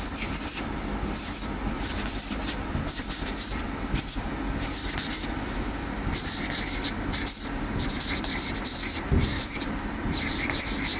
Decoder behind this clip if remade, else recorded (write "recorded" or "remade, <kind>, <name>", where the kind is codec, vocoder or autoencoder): remade, vocoder, BigVGAN v2